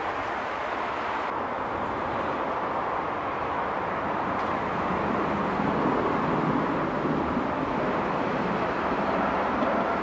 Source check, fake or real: real